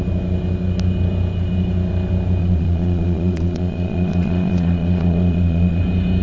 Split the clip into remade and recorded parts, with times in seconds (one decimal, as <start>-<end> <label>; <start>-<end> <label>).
0.0-2.4 recorded; 2.4-5.8 remade; 5.8-6.2 recorded